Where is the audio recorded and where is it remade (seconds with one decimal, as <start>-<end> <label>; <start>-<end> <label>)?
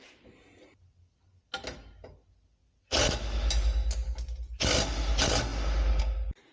0.0-6.5 recorded